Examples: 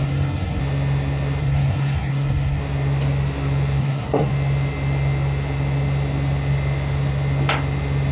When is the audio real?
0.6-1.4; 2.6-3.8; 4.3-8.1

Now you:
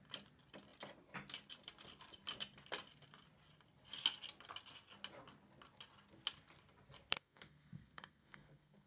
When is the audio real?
0.0-7.2

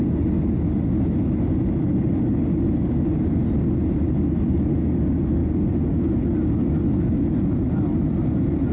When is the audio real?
0.0-8.7